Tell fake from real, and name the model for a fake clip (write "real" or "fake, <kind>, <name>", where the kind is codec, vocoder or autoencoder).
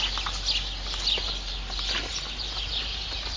real